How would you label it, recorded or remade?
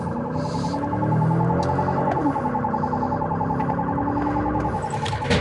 recorded